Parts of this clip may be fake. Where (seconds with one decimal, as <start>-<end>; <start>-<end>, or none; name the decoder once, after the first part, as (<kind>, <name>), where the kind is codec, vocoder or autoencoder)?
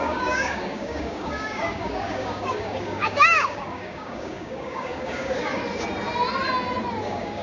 0.0-5.6 (codec, DAC); 7.0-7.4